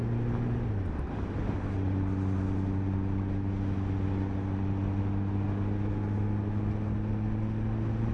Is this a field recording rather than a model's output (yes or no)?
yes